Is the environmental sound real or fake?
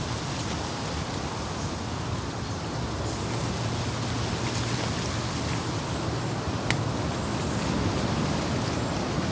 real